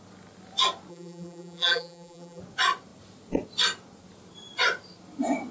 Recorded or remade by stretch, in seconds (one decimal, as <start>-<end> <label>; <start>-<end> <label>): 0.0-0.9 recorded; 0.9-2.4 remade; 2.4-5.5 recorded